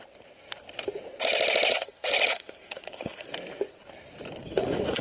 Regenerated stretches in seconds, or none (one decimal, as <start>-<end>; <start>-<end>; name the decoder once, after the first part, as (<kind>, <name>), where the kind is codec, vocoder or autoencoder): 1.7-3.3 (vocoder, Vocos); 4.4-5.0